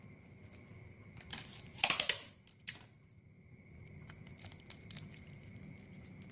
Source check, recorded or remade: remade